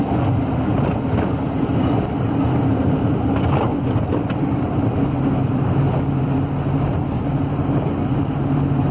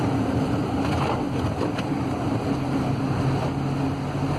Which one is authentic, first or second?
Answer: second